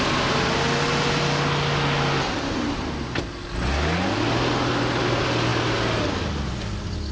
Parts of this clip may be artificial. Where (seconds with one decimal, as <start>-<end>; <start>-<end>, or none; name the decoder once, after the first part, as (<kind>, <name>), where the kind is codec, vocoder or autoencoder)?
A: none